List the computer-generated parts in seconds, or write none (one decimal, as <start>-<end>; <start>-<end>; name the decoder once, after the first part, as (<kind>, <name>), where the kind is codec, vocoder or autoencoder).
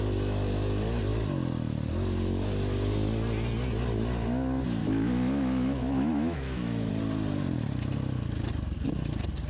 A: 4.8-6.9 (autoencoder, DAC-VAE)